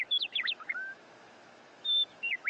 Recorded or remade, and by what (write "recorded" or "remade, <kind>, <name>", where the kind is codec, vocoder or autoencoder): remade, autoencoder, DAC-VAE